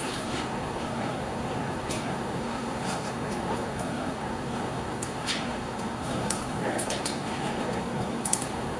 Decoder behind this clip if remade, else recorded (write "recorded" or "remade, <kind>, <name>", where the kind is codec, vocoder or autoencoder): remade, codec, SNAC